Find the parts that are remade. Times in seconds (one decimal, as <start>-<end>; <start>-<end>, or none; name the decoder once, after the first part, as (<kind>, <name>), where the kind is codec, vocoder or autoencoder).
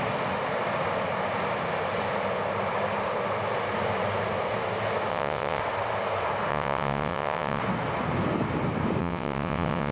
5.1-5.6 (vocoder, WaveNeXt); 6.5-7.6; 9.0-9.9